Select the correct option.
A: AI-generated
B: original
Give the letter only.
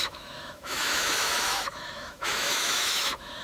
A